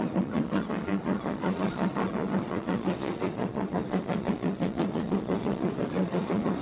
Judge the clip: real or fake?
fake